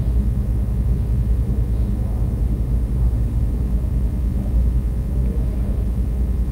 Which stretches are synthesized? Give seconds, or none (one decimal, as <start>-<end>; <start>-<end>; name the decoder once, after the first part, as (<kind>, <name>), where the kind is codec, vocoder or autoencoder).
2.4-3.4 (autoencoder, DAC-VAE)